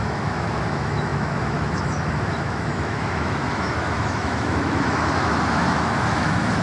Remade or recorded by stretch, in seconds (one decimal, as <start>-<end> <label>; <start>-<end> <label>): 0.0-6.6 remade